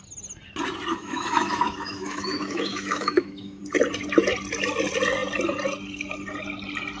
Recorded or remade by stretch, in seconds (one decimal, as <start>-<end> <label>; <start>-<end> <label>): 0.0-0.9 recorded; 0.9-3.6 remade; 3.6-7.0 recorded